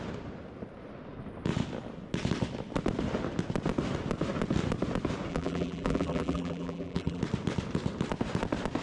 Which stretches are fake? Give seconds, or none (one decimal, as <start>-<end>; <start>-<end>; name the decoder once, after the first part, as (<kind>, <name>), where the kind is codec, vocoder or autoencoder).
5.3-7.2 (vocoder, BigVGAN v2)